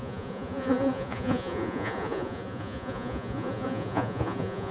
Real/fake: fake